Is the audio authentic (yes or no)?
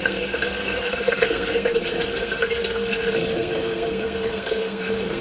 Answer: no